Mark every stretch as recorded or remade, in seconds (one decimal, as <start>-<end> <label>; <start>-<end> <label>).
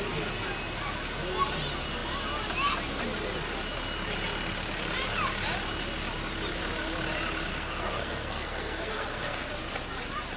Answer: 0.0-7.5 recorded; 7.5-9.5 remade; 9.5-10.4 recorded